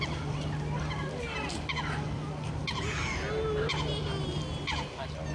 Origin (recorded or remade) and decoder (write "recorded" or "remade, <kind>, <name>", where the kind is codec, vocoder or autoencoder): recorded